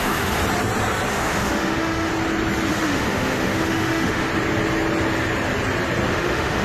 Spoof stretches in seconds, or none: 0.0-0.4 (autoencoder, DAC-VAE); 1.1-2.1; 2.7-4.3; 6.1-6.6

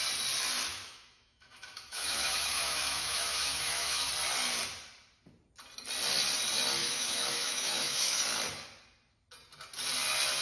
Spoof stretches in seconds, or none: 0.7-4.1 (autoencoder, DAC-VAE); 6.8-8.2

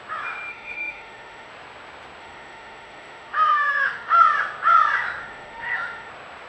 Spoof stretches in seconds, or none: 0.5-1.5 (autoencoder, DAC-VAE); 2.2-4.2; 5.2-6.1

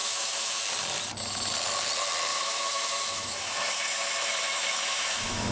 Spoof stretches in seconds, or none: 0.0-0.6 (autoencoder, DAC-VAE); 2.3-5.5

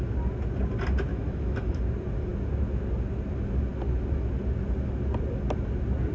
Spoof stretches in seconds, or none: 1.1-1.8 (autoencoder, DAC-VAE)

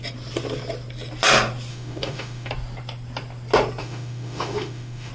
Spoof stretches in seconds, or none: 1.7-2.5 (autoencoder, DAC-VAE); 3.8-5.1

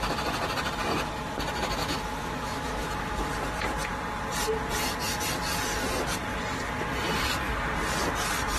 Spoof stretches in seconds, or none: 1.8-3.3 (autoencoder, DAC-VAE)